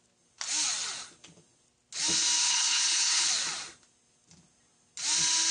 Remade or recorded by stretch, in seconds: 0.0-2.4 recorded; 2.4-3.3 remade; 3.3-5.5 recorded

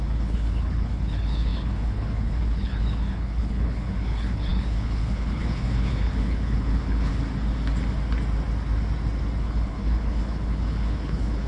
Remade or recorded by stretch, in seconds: 0.0-7.1 remade; 7.1-9.4 recorded; 9.4-11.5 remade

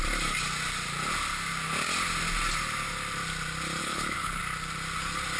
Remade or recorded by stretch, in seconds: 0.0-3.8 recorded; 3.8-4.4 remade; 4.4-5.4 recorded

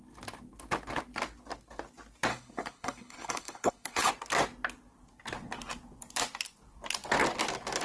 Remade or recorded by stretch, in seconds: 0.0-2.3 recorded; 2.3-4.1 remade; 4.1-7.8 recorded